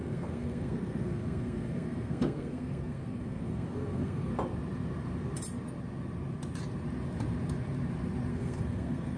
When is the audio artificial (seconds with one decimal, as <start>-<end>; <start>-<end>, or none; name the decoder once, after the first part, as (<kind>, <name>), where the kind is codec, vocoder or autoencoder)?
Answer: 0.0-4.3 (codec, SNAC); 8.3-9.2